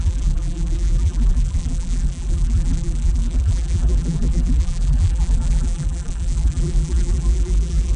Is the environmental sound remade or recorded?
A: remade